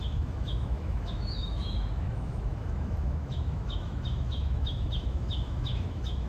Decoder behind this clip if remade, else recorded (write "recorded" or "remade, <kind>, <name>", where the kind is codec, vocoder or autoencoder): remade, autoencoder, DAC-VAE